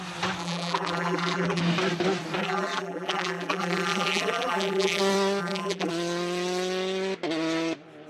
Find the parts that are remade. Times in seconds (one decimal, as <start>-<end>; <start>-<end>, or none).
0.4-1.6; 2.4-5.0; 5.4-5.9